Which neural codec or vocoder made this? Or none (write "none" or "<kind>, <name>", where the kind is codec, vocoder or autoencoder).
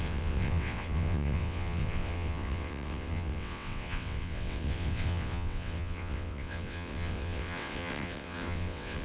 vocoder, WaveNeXt